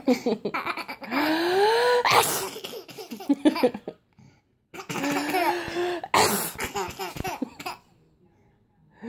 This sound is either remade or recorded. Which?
recorded